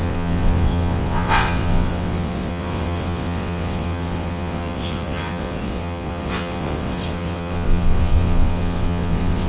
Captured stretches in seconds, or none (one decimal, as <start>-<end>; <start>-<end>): none

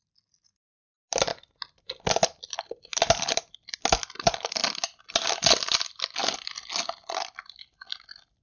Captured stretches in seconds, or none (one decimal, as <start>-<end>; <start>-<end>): 0.0-8.4